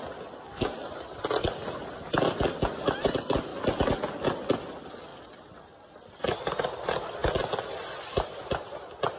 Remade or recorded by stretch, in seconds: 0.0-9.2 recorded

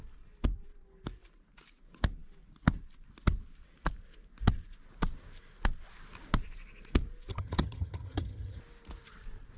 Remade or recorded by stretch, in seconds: 0.0-7.3 recorded; 7.3-8.6 remade; 8.6-9.6 recorded

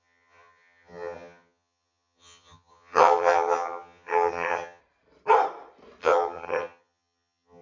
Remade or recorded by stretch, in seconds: 0.0-4.8 remade; 4.8-6.0 recorded; 6.0-7.6 remade

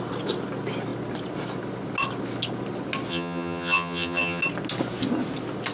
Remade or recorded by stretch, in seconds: 0.0-3.1 recorded; 3.1-4.4 remade; 4.4-5.7 recorded

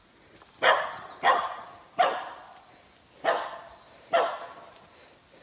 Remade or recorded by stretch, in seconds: 0.0-5.4 recorded

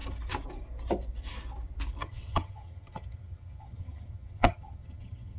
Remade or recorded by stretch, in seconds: 0.0-2.0 recorded; 2.0-5.4 remade

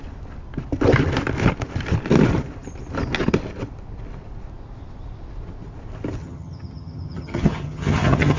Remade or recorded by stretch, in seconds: 0.0-6.2 recorded; 6.2-8.4 remade